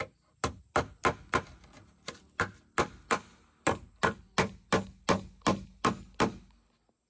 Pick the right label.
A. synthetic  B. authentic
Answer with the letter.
B